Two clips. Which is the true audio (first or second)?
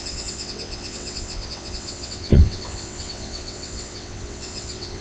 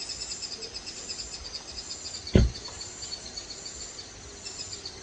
second